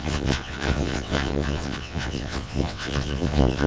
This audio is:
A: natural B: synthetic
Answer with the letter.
B